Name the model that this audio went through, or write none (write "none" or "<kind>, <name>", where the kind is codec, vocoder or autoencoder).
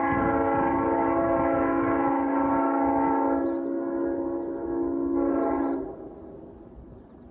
none